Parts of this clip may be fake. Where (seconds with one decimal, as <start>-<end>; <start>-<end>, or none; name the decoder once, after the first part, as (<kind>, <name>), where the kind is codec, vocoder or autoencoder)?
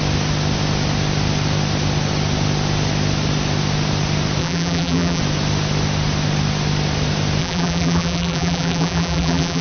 4.4-5.2 (vocoder, BigVGAN v2); 7.4-9.6